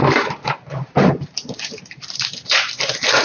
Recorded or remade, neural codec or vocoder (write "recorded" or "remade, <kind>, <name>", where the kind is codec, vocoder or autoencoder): remade, vocoder, BigVGAN v2